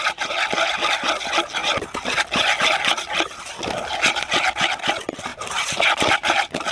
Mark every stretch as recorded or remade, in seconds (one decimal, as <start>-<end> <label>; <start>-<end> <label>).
0.0-5.3 recorded; 5.3-6.1 remade; 6.1-6.7 recorded